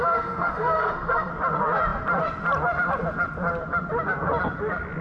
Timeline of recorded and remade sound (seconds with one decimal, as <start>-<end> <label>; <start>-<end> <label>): 0.0-1.3 remade; 1.3-5.0 recorded